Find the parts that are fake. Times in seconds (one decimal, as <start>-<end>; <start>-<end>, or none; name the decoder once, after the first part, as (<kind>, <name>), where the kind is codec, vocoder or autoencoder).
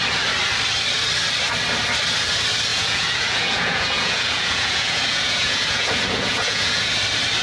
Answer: 2.7-6.9 (vocoder, Vocos)